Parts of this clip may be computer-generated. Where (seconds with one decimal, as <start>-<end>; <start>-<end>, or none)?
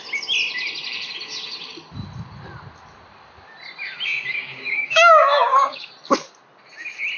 4.3-5.9